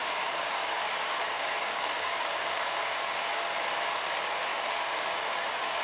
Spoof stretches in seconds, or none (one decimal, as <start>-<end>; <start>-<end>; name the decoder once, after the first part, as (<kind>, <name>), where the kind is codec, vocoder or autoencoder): 0.0-3.5 (codec, DAC); 4.5-5.8